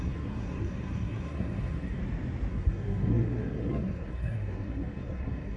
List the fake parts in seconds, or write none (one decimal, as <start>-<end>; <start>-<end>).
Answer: 0.0-2.0; 2.5-5.6